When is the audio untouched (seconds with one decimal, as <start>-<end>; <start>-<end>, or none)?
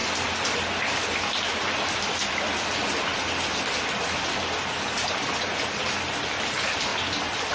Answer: 0.0-7.5